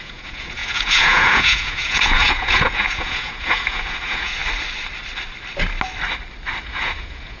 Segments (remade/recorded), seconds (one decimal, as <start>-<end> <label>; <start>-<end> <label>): 0.0-4.4 remade; 4.4-6.6 recorded; 6.6-7.4 remade

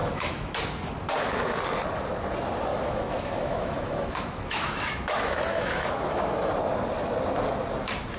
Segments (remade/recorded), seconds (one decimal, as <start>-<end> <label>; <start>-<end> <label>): 0.0-0.6 remade; 0.6-2.7 recorded; 2.7-6.5 remade; 6.5-8.2 recorded

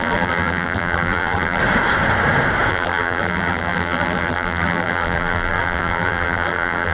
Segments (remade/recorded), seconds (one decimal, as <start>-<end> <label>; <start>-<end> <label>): 0.0-1.6 remade; 1.6-2.7 recorded; 2.7-6.9 remade

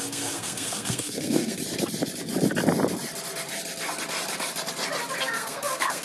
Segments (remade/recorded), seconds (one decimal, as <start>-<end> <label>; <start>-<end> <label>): 0.0-1.6 remade; 1.6-5.2 recorded; 5.2-6.0 remade

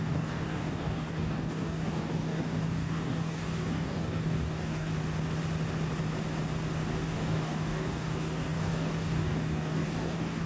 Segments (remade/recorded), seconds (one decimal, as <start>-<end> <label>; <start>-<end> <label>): 0.0-4.9 remade; 4.9-6.9 recorded; 6.9-10.5 remade

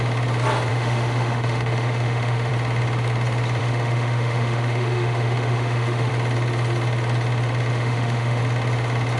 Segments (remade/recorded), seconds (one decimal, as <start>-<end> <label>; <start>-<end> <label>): 0.0-0.7 recorded; 0.7-2.5 remade; 2.5-3.6 recorded; 3.6-6.1 remade; 6.1-7.7 recorded; 7.7-8.4 remade; 8.4-9.2 recorded